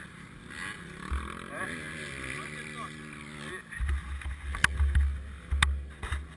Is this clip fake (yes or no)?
no